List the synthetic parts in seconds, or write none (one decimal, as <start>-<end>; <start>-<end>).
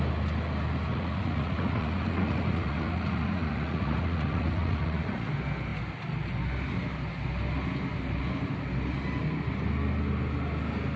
0.9-5.3